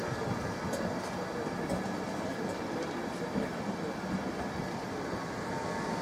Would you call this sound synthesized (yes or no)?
no